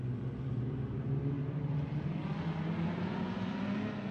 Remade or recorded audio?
recorded